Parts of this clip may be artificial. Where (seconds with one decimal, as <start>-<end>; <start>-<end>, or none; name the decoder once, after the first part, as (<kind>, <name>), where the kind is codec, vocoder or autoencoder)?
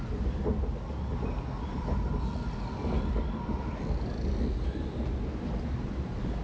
none